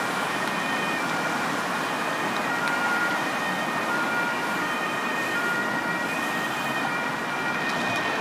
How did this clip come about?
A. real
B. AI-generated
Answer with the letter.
A